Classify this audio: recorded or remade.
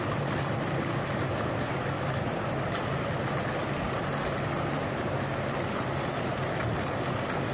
recorded